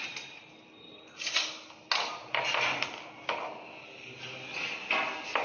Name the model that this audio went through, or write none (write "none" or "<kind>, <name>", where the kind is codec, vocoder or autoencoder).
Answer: none